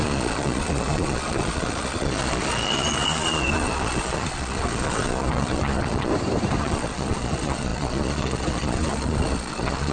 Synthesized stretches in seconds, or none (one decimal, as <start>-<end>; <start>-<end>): 0.0-6.1; 6.6-9.9